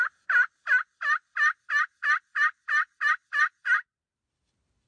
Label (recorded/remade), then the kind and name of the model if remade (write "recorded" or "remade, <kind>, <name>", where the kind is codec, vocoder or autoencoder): remade, vocoder, BigVGAN v2